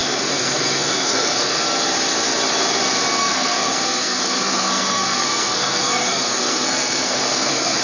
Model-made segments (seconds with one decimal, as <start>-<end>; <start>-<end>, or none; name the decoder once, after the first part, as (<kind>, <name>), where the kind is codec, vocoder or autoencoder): 0.0-1.6 (codec, SNAC); 3.2-7.8